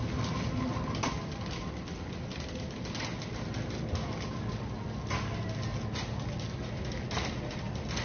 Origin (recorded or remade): recorded